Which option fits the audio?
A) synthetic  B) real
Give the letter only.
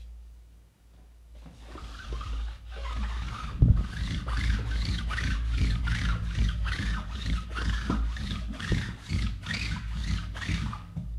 A